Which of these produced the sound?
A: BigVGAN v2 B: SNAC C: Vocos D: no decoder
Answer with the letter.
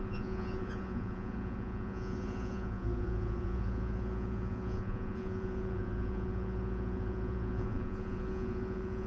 C